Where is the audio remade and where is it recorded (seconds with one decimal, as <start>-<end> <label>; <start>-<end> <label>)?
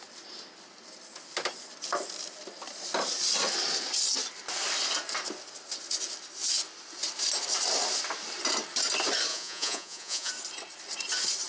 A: 0.0-9.3 recorded; 9.3-10.3 remade; 10.3-11.5 recorded